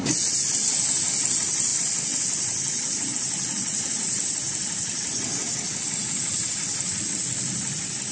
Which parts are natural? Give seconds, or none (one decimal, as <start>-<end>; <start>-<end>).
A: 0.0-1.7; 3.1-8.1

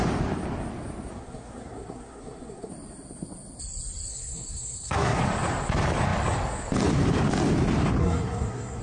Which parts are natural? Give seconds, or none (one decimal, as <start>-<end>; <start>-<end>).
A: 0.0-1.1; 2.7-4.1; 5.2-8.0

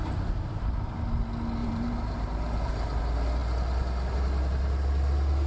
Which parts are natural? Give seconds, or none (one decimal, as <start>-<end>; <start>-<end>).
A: 0.0-1.6; 3.0-5.5

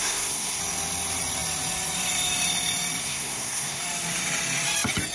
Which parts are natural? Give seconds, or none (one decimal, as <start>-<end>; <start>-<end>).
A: 0.6-3.0; 3.8-5.1

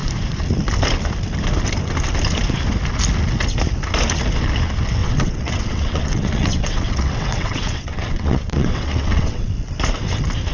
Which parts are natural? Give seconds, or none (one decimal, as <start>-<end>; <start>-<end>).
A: 0.0-5.0; 9.5-10.5

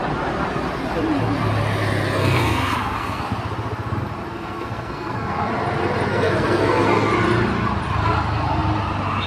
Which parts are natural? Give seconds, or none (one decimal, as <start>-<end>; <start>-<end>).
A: 0.0-2.2; 3.2-4.3; 5.5-6.1; 7.1-9.3

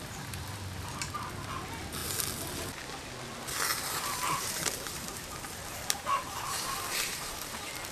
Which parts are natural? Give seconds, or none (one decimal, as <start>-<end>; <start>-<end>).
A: 0.0-3.7